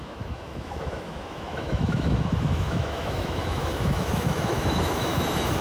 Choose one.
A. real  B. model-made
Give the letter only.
B